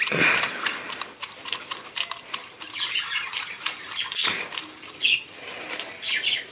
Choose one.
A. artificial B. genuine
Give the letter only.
A